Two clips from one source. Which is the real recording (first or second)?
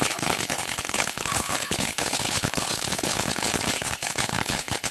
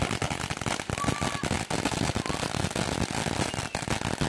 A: second